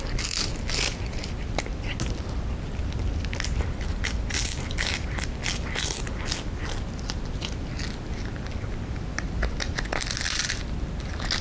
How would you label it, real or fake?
real